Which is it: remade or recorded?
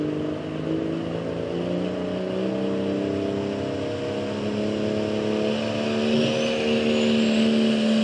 recorded